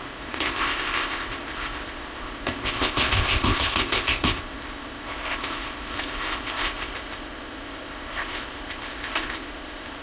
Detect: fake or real fake